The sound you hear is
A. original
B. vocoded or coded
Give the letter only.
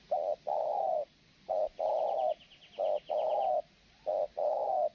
A